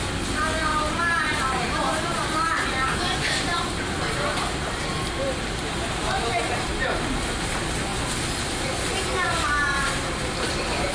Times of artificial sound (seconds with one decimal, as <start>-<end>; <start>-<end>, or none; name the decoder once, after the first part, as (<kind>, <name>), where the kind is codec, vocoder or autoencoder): 0.7-1.4 (vocoder, BigVGAN v2)